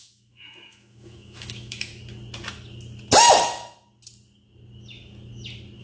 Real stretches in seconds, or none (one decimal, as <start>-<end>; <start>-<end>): 1.9-5.8